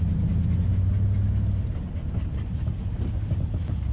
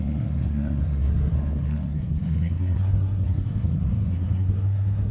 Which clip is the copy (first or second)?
second